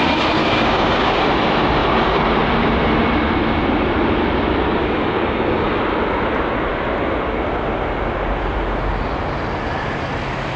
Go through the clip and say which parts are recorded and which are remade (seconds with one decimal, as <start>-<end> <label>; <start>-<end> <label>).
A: 0.0-0.4 recorded; 0.4-1.2 remade; 1.2-4.8 recorded; 4.8-5.8 remade; 5.8-10.6 recorded